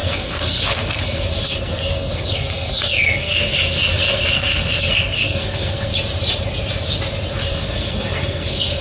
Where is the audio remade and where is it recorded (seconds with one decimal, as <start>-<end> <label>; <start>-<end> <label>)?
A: 0.0-5.9 remade; 5.9-7.4 recorded; 7.4-8.8 remade